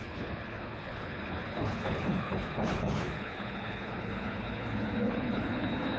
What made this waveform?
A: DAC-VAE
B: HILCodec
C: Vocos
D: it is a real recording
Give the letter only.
B